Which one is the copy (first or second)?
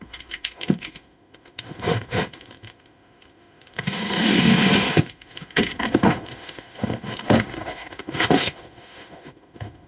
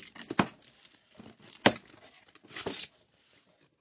first